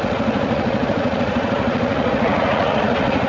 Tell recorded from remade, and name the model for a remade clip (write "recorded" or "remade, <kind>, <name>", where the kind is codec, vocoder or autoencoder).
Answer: remade, vocoder, Vocos